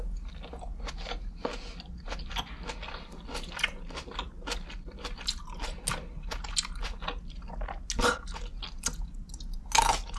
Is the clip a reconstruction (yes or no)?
no